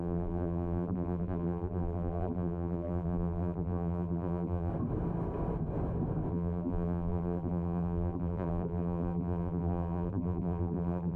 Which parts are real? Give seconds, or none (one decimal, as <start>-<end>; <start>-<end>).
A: 4.7-6.3